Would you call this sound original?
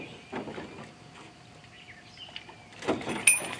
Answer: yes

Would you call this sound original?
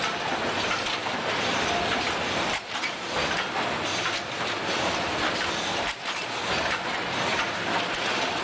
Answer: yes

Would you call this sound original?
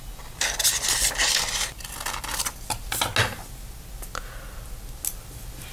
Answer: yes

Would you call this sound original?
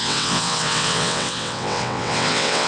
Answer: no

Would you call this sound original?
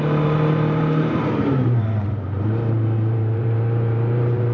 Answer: no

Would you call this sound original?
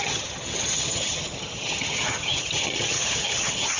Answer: no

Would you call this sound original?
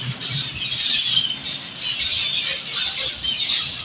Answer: yes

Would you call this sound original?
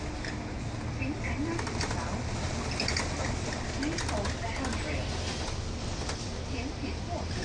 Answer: yes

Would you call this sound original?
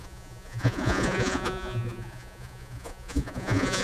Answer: no